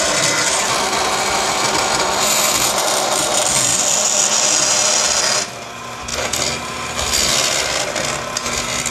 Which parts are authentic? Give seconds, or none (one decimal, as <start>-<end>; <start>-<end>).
0.0-8.9